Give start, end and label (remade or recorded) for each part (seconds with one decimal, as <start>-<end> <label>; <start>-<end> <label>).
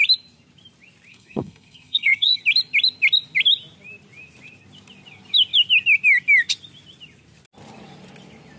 0.0-1.1 recorded; 1.1-2.4 remade; 2.4-8.6 recorded